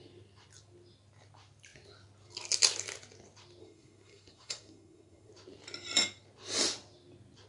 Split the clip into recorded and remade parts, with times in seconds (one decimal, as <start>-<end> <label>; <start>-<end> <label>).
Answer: 0.0-3.6 recorded; 3.6-5.3 remade; 5.3-7.5 recorded